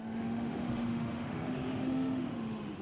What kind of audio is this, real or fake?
fake